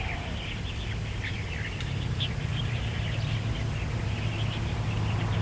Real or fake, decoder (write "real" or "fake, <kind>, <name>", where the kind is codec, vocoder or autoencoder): real